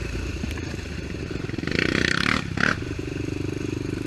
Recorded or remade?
remade